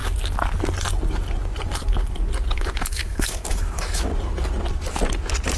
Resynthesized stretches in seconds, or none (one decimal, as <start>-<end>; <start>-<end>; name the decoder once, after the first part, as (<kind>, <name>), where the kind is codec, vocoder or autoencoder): 2.5-4.1 (autoencoder, DAC-VAE)